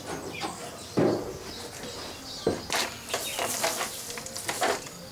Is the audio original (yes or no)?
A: yes